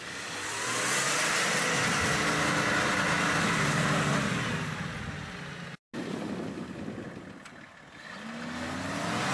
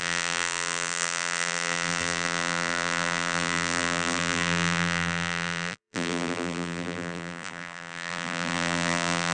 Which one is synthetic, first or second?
second